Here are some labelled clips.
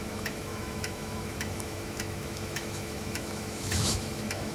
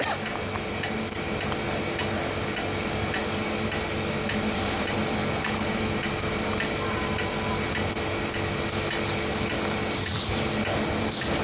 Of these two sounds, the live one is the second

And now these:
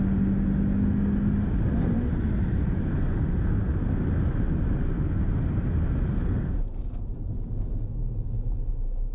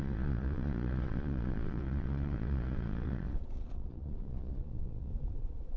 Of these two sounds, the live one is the first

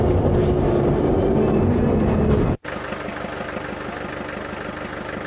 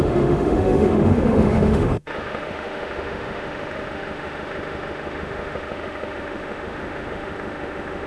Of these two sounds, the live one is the first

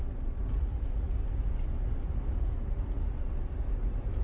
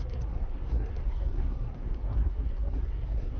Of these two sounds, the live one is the first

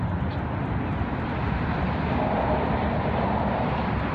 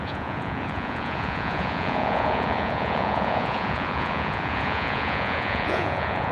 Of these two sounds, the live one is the first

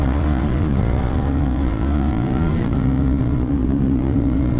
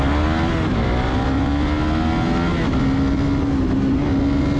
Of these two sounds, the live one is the second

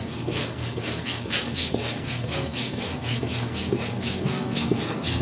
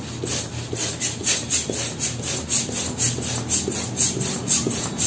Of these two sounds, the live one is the second